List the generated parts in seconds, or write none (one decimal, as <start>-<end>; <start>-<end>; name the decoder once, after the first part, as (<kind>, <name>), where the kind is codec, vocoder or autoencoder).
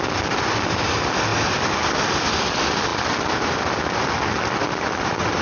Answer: none